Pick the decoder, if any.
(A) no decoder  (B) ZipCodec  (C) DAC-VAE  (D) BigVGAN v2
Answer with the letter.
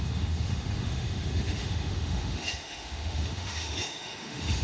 C